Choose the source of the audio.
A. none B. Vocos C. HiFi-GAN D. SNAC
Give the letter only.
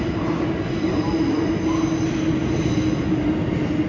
A